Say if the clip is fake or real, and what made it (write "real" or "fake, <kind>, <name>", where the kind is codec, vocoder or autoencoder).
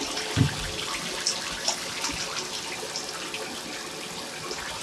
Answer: real